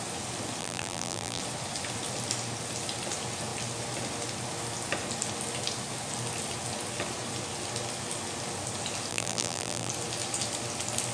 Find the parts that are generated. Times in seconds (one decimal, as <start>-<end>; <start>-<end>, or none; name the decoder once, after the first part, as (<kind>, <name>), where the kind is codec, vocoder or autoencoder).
0.6-1.4 (vocoder, BigVGAN v2); 9.1-9.9